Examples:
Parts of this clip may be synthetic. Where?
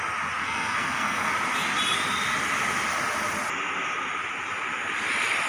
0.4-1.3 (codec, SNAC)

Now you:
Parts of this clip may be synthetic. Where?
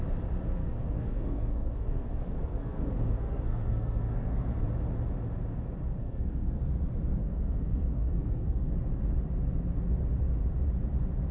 0.6-4.6 (codec, SNAC); 6.0-6.6; 7.2-8.7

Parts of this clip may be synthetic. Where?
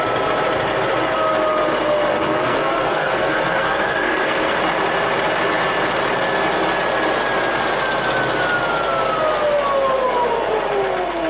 2.1-4.6 (codec, SNAC)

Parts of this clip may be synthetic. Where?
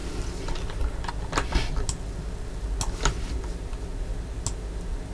none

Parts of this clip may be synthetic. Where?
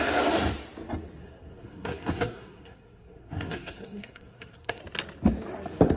1.2-4.8 (codec, SNAC)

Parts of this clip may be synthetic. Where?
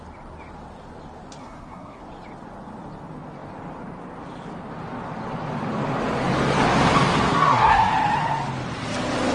1.4-2.0 (codec, SNAC); 7.3-7.9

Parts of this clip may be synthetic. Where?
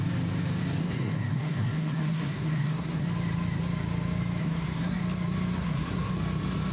0.8-3.1 (codec, SNAC); 4.4-5.0; 5.6-6.1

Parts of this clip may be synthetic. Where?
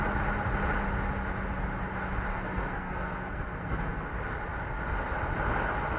2.3-4.1 (codec, SNAC)